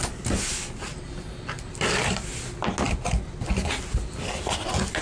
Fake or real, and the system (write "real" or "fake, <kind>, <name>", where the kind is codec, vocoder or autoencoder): real